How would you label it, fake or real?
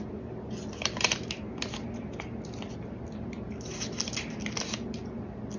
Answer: real